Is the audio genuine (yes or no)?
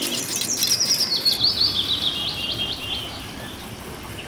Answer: yes